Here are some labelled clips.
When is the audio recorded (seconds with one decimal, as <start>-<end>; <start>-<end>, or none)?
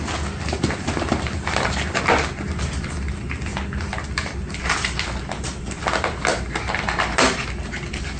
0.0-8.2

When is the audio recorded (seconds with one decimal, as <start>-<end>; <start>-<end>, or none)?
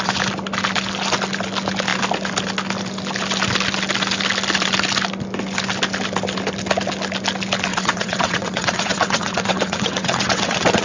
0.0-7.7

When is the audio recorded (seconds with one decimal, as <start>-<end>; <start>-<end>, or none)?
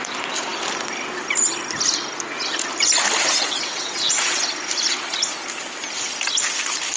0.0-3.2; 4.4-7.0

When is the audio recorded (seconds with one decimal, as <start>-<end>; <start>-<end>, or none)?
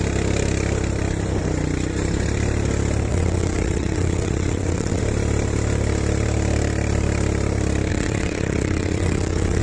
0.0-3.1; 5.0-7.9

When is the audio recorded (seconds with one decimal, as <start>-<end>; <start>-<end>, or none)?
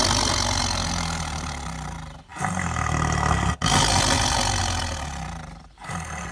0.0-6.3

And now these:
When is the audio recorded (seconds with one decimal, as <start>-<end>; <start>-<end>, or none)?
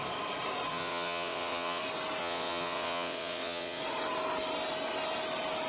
0.0-0.7; 1.8-2.2; 3.8-5.7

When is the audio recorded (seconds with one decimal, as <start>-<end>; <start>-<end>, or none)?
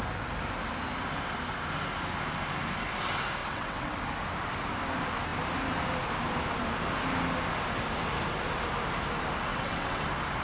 0.0-3.4; 4.0-9.5; 10.0-10.4